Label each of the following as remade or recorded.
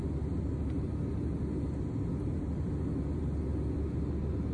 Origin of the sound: recorded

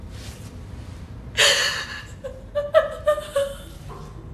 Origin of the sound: recorded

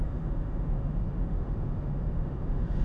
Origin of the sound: remade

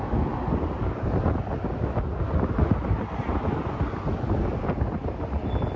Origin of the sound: recorded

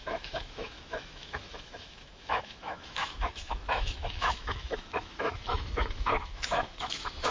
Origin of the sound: remade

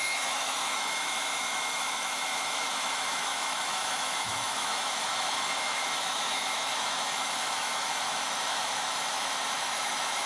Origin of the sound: remade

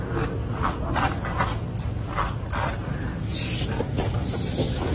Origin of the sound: recorded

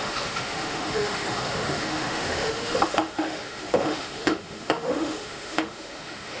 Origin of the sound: remade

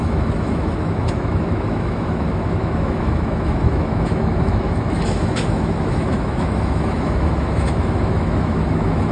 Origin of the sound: remade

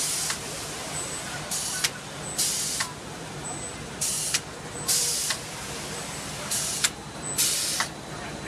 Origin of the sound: recorded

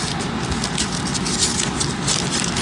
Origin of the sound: recorded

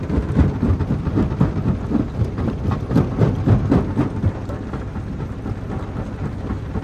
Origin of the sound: recorded